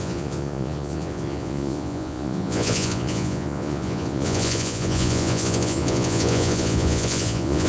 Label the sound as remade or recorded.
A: remade